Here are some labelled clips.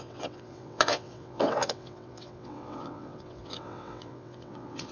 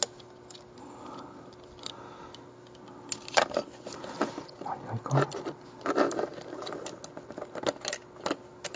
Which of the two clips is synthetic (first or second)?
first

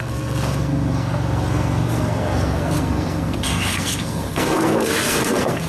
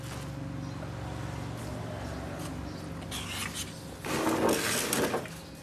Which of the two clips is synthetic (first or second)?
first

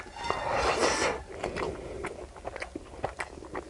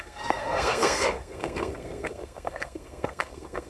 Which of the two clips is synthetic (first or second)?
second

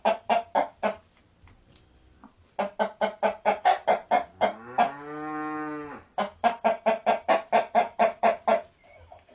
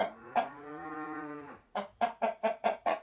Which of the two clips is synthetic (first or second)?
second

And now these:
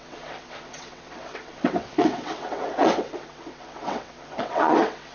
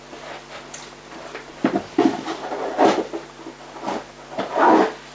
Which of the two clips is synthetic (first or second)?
first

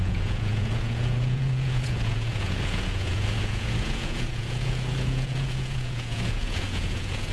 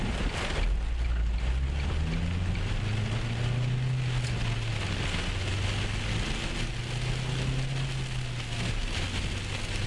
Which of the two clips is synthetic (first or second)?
first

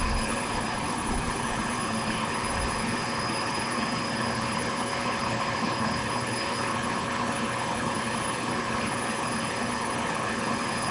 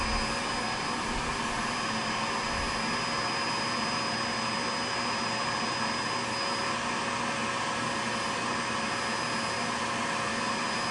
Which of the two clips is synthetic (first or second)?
first